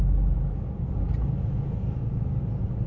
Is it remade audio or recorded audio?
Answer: recorded